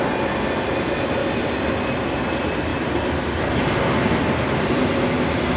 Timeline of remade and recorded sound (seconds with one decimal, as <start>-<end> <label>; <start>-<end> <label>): 0.0-1.2 remade; 1.2-2.0 recorded; 2.0-2.7 remade; 2.7-4.7 recorded; 4.7-5.6 remade